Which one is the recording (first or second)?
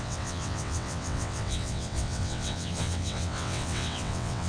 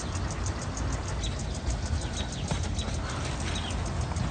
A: second